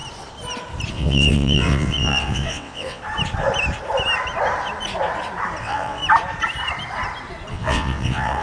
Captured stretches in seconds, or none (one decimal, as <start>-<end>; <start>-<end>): 0.0-0.9; 3.0-5.6; 6.0-7.5